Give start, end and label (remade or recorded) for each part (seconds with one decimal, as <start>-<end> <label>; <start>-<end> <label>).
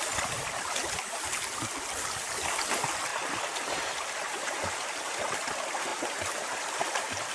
0.0-7.3 recorded